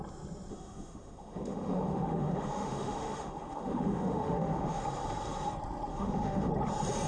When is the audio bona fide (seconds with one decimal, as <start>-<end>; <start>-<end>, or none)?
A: 0.0-0.5; 4.8-5.9; 6.5-7.1